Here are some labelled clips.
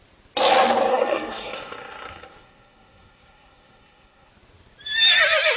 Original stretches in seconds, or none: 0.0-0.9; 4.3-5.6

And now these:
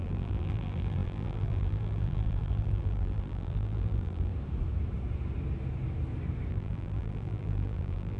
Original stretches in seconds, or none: 4.3-6.5